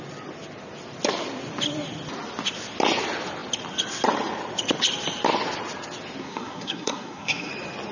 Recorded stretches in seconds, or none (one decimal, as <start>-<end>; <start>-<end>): 0.0-6.2; 7.5-7.9